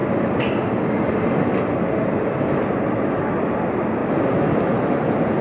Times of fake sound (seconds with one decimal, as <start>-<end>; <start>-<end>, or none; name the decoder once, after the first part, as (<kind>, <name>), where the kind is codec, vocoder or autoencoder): none